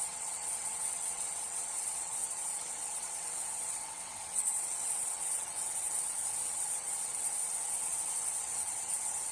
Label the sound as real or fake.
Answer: fake